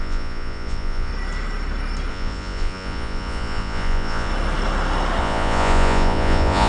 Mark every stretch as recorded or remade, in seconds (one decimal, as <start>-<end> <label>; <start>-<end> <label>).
0.0-1.1 remade; 1.1-2.1 recorded; 2.1-4.3 remade; 4.3-5.2 recorded; 5.2-6.7 remade